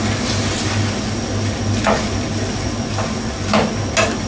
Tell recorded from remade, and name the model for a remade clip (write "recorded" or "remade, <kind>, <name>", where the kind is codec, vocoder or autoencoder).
recorded